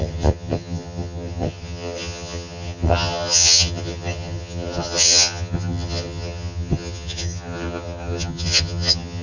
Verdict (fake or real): fake